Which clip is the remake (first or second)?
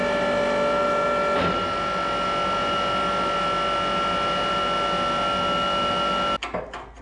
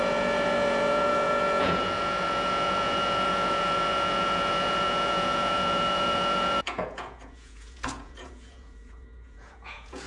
second